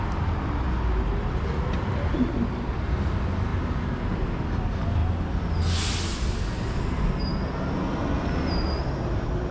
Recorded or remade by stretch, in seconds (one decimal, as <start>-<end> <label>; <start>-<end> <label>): 0.0-9.5 recorded